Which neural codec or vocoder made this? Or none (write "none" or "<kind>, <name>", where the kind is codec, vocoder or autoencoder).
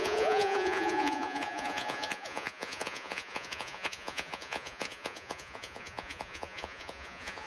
vocoder, Vocos